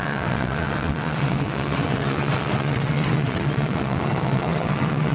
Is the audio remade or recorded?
remade